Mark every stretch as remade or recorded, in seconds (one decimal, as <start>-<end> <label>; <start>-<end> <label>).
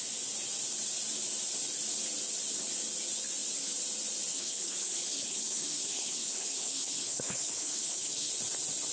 0.0-4.3 recorded; 4.3-8.3 remade; 8.3-8.9 recorded